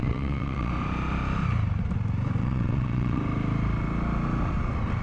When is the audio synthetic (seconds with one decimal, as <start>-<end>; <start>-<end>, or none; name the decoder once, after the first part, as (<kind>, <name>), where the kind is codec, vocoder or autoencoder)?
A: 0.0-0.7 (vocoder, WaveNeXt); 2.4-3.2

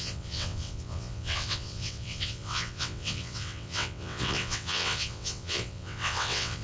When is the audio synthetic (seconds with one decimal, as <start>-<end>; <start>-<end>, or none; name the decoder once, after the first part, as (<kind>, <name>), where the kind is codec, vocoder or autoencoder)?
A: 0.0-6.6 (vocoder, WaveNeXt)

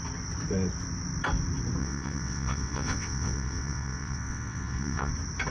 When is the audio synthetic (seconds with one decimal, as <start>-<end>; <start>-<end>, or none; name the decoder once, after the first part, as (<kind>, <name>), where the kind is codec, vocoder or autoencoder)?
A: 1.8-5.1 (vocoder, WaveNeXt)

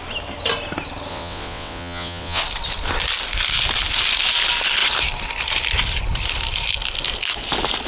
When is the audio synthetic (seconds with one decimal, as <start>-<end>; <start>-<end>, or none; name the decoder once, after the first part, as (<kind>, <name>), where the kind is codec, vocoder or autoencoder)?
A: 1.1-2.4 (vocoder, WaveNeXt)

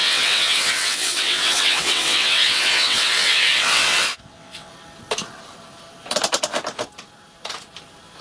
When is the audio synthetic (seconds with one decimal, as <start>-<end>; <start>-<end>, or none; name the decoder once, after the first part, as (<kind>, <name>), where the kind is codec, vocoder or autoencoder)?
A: 0.0-4.7 (vocoder, WaveNeXt)

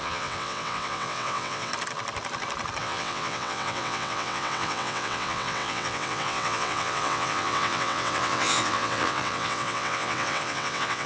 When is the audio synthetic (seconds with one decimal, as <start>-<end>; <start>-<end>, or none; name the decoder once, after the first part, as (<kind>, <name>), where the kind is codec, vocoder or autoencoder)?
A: 0.0-1.7 (vocoder, WaveNeXt); 2.8-11.1

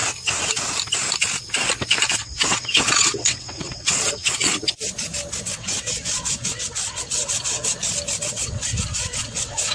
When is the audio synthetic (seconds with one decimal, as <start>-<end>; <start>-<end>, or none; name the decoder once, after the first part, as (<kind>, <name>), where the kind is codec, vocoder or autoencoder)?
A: 2.1-4.5 (vocoder, WaveNeXt); 5.4-7.7; 8.2-9.7